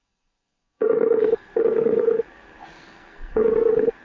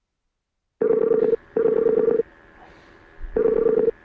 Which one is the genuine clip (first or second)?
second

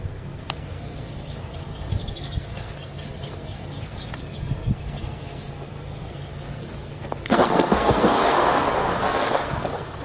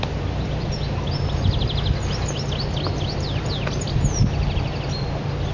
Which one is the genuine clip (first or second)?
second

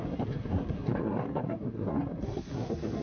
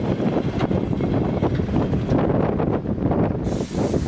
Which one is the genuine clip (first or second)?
second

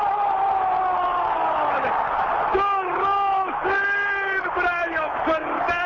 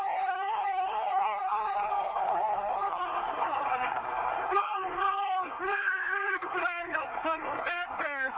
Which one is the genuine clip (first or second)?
first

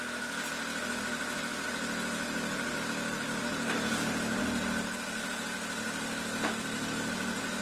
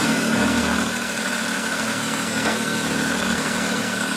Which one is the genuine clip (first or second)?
first